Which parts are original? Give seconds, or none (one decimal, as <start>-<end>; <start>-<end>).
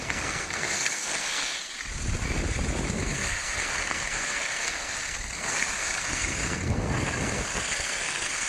1.7-2.9